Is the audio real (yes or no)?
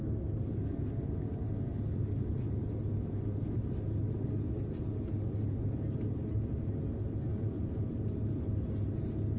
yes